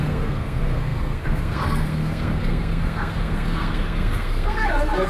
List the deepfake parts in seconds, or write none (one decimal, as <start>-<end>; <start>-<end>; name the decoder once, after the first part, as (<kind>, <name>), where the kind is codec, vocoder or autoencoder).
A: 0.0-5.1 (codec, SNAC)

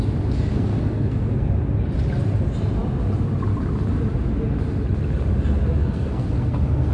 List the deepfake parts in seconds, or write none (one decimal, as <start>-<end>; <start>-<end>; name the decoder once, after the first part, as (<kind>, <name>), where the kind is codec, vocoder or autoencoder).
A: 0.5-1.5 (codec, SNAC); 5.8-6.9

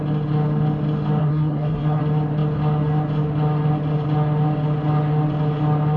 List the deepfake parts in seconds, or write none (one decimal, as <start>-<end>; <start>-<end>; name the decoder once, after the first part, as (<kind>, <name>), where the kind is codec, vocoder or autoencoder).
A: 1.2-2.0 (codec, SNAC)

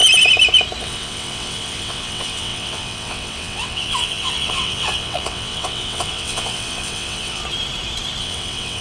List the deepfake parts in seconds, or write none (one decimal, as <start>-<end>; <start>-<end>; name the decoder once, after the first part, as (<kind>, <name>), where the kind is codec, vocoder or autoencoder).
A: 0.8-7.4 (vocoder, WaveNeXt); 8.2-8.8

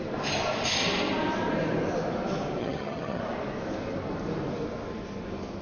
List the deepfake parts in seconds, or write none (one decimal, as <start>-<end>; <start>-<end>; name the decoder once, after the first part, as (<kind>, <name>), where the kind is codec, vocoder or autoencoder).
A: 2.6-3.2 (vocoder, HiFi-GAN)

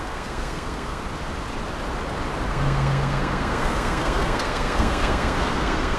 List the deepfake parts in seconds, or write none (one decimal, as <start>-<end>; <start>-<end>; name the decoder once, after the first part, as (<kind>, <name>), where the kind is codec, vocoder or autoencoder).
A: 0.0-1.0 (codec, SNAC); 2.5-6.0